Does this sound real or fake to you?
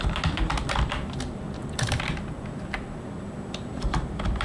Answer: real